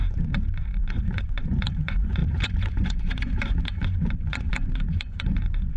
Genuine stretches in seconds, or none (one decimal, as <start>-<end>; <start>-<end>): none